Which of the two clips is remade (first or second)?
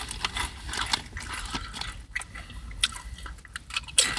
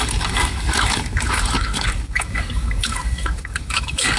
second